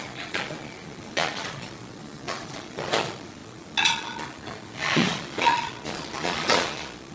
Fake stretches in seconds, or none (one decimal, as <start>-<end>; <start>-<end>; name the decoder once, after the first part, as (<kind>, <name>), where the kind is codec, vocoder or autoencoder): 0.0-7.1 (vocoder, Vocos)